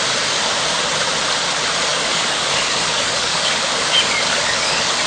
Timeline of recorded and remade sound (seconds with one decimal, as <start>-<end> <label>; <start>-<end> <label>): 0.0-1.9 recorded; 1.9-5.1 remade